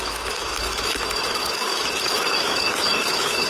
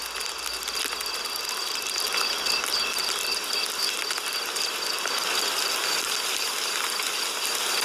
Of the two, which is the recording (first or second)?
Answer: second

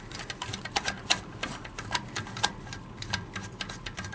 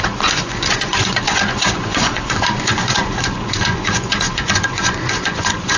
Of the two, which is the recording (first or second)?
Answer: first